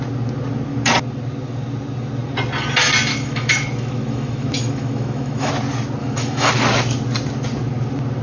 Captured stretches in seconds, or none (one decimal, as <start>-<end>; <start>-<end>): 0.0-3.1; 5.5-6.0; 6.5-8.2

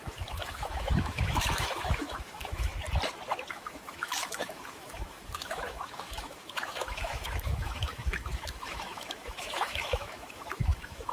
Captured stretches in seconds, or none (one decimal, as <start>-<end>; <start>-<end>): 2.7-3.5